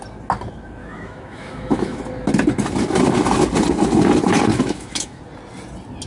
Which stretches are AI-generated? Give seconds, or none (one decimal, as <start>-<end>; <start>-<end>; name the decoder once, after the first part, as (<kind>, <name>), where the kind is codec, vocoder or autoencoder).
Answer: 0.8-2.0 (autoencoder, DAC-VAE); 4.5-5.2